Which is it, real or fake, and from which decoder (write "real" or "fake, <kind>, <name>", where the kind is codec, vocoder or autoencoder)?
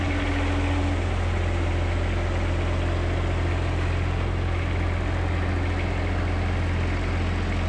real